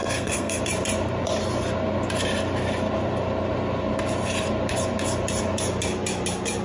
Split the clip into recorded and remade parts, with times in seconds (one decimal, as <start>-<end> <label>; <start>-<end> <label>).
0.0-0.6 remade; 0.6-6.6 recorded